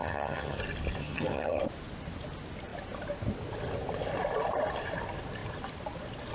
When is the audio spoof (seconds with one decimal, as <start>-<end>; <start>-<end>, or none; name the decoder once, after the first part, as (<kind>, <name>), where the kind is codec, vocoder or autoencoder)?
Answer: 0.0-0.6 (vocoder, HiFi-GAN); 1.0-1.6